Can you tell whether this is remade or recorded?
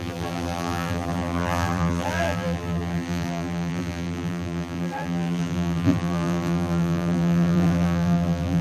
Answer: remade